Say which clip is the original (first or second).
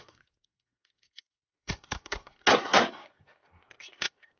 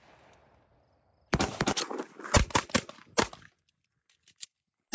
second